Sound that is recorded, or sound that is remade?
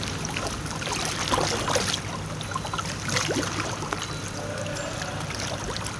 recorded